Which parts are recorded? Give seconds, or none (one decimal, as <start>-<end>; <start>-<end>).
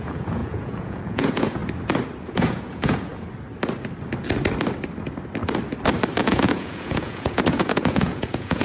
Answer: 1.6-2.2; 3.1-6.2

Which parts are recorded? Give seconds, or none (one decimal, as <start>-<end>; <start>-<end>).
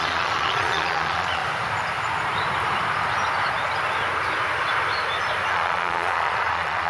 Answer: 1.4-5.5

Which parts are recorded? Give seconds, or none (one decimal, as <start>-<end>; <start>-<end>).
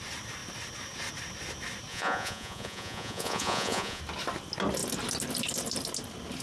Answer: 0.0-1.9; 4.0-6.4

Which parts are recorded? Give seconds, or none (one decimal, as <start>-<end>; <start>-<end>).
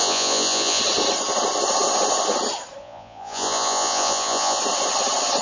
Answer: 0.8-2.8; 4.6-5.4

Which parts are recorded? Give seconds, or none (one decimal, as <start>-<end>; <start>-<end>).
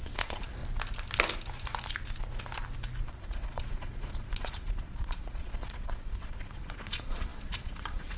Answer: 0.6-3.1